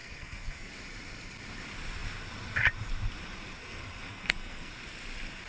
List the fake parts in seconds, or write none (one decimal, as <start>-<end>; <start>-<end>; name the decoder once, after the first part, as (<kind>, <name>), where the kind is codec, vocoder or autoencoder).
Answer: 0.0-0.7 (codec, SNAC); 3.6-4.7